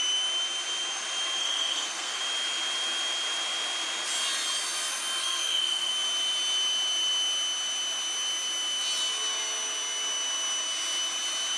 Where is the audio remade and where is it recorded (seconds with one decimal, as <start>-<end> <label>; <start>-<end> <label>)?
0.0-1.4 recorded; 1.4-2.2 remade; 2.2-5.2 recorded; 5.2-5.9 remade; 5.9-11.6 recorded